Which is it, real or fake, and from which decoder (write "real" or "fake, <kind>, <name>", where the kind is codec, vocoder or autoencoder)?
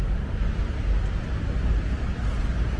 real